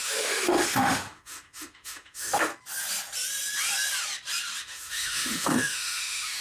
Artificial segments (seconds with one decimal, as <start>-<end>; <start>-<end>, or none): 0.0-2.5; 4.6-6.4